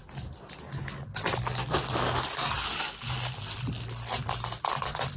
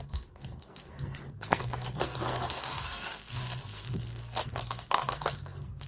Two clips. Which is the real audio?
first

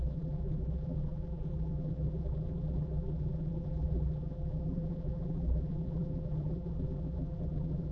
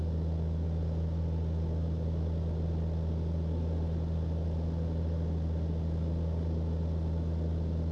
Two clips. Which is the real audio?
second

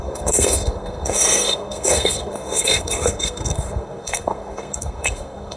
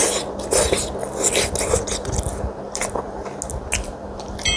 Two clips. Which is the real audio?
second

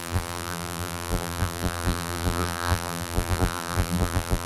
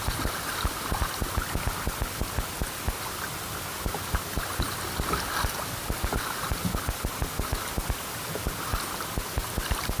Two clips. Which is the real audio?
second